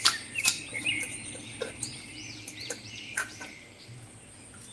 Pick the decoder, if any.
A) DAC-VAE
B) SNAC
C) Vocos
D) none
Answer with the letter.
D